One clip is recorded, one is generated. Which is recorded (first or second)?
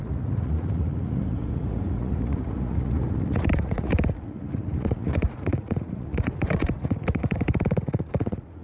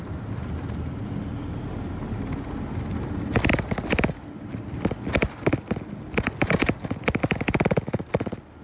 second